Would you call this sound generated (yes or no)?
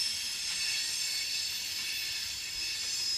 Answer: no